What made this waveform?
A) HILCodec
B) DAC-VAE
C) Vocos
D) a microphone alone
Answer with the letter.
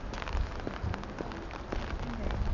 D